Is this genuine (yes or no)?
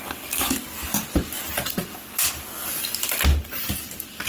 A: yes